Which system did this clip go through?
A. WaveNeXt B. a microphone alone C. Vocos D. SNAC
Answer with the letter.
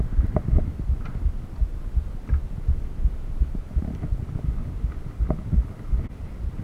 B